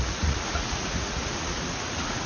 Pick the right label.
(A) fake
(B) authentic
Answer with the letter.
A